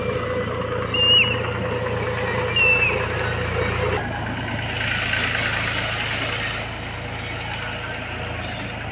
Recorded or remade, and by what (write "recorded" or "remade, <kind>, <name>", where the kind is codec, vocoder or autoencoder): recorded